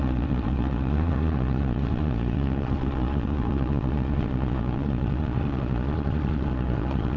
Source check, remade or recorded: remade